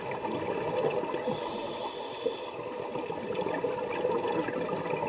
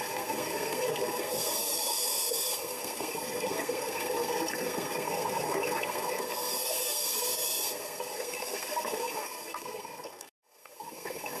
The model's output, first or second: second